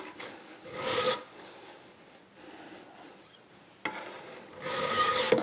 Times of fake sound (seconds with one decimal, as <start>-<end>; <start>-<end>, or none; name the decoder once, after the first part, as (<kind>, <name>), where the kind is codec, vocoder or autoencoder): 0.0-2.2 (codec, DAC); 4.5-5.4